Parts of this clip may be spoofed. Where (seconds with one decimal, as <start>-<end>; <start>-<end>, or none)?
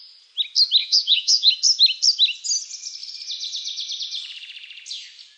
0.8-1.5